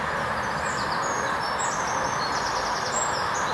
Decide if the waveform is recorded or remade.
recorded